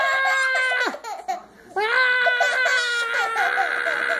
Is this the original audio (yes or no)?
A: yes